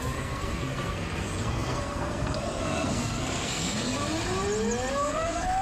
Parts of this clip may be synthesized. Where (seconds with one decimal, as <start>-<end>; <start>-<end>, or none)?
0.0-4.0; 4.9-5.6